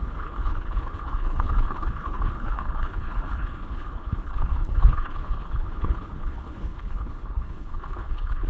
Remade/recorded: remade